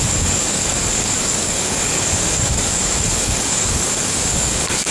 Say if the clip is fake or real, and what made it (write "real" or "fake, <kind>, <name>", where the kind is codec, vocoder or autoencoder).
fake, codec, DAC